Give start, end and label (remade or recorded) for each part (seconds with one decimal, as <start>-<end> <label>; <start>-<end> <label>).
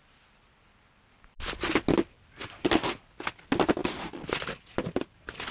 0.0-5.5 recorded